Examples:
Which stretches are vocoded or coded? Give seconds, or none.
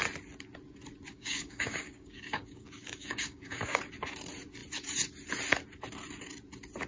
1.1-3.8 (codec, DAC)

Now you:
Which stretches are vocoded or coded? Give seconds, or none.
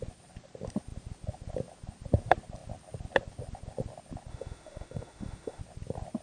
4.3-5.6 (autoencoder, DAC-VAE)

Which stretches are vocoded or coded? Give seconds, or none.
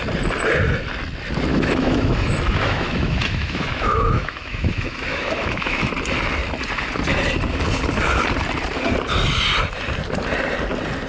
1.5-5.9 (autoencoder, DAC-VAE)